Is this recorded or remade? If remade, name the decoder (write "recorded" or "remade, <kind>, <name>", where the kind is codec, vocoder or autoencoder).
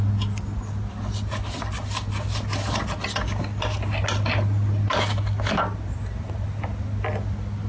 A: recorded